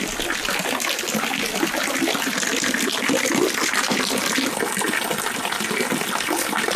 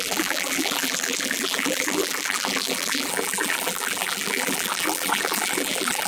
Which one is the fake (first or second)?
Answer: second